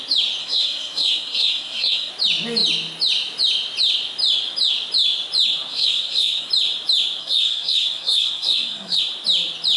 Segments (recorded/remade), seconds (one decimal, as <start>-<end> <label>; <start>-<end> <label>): 0.0-0.4 recorded; 0.4-2.1 remade; 2.1-5.7 recorded; 5.7-6.5 remade; 6.5-7.2 recorded; 7.2-9.0 remade; 9.0-9.8 recorded